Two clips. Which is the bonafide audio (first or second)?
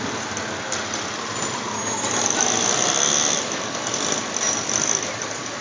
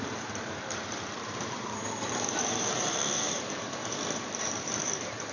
first